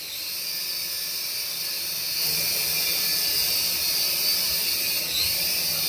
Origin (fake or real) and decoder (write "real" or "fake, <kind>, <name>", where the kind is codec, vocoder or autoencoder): real